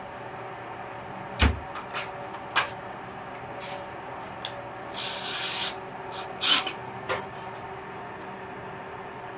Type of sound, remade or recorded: recorded